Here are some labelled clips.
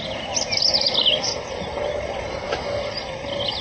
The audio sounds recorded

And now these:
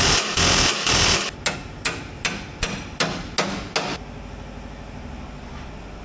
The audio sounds recorded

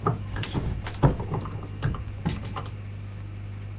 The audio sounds recorded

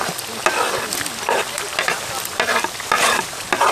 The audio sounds recorded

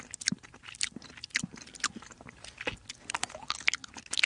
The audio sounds recorded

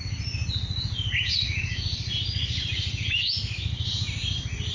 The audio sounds recorded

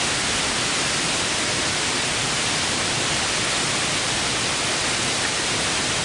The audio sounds recorded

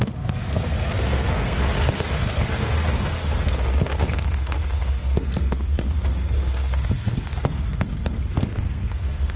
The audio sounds remade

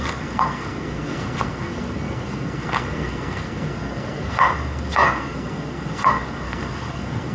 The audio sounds remade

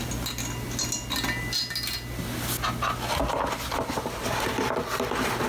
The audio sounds recorded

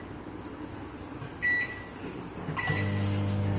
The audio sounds recorded